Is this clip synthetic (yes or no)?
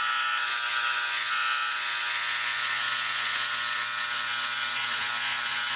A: yes